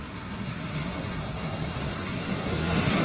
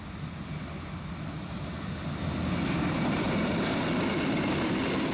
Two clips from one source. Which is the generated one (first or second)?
first